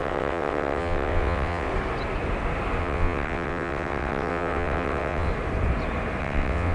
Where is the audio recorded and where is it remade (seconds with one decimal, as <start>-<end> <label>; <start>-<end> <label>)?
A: 0.0-1.7 remade; 1.7-2.8 recorded; 2.8-5.3 remade; 5.3-6.2 recorded; 6.2-6.7 remade